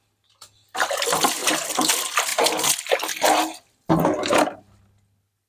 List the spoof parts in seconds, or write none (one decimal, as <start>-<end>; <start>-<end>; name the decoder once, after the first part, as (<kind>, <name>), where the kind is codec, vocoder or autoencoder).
1.4-1.9 (vocoder, BigVGAN v2)